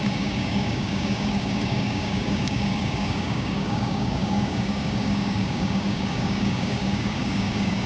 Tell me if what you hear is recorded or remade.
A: remade